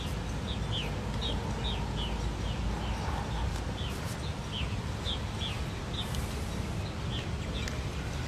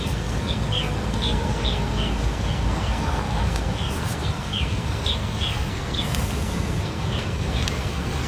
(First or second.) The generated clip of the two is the second